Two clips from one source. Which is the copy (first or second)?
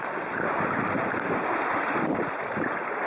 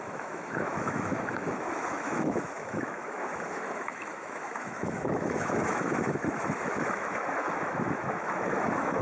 second